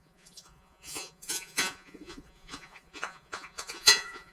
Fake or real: fake